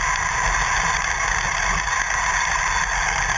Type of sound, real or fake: real